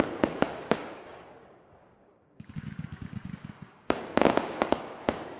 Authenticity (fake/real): fake